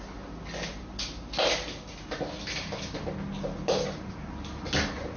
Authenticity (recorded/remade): recorded